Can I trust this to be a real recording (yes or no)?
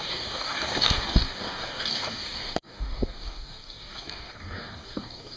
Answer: no